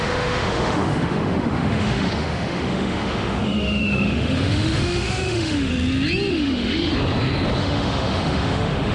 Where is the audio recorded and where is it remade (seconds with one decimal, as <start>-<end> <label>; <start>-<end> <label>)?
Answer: 0.0-5.7 remade; 5.7-6.3 recorded; 6.3-6.9 remade; 6.9-7.6 recorded; 7.6-8.9 remade